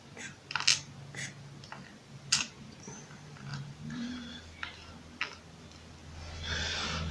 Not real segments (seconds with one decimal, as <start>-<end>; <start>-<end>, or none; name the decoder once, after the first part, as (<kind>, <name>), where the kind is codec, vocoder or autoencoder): 1.9-3.0 (vocoder, BigVGAN v2); 3.5-4.4